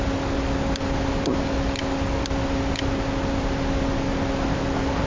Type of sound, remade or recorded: recorded